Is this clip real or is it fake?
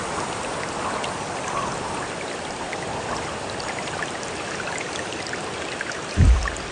fake